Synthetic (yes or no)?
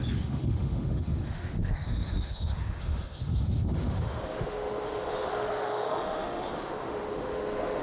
yes